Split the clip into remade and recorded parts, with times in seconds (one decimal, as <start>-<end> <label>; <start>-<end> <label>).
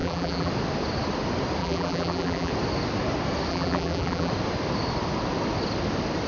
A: 0.0-0.5 remade; 0.5-1.6 recorded; 1.6-2.5 remade; 2.5-3.5 recorded; 3.5-4.3 remade; 4.3-6.3 recorded